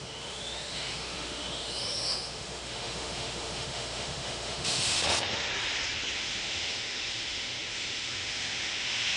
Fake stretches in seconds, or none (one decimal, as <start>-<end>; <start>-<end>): 0.0-5.5; 6.1-9.2